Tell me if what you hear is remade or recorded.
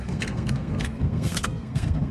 remade